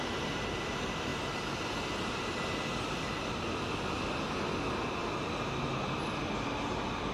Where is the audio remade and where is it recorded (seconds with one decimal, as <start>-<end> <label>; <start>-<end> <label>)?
0.0-7.1 recorded